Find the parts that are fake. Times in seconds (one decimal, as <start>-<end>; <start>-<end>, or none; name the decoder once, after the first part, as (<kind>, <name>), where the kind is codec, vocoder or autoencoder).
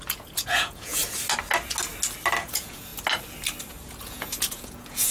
0.0-1.0 (vocoder, Vocos); 2.4-2.9; 3.7-5.1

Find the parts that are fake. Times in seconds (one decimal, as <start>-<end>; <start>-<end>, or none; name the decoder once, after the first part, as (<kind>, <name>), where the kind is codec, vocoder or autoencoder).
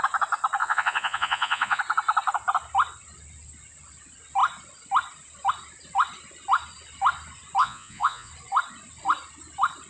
0.6-1.8 (vocoder, Vocos); 7.6-8.3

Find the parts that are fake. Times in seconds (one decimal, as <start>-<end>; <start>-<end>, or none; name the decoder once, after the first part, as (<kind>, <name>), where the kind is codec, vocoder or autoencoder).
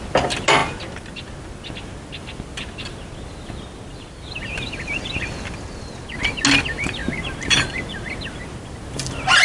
none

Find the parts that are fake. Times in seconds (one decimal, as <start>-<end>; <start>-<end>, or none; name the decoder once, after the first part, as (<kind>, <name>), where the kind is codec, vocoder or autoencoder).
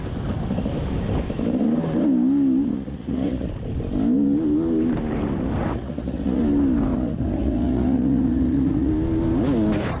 2.7-3.5 (vocoder, Vocos); 5.6-6.4; 6.9-8.9